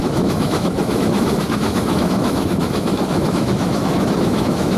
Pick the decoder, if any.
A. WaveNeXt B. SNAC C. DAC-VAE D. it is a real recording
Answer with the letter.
C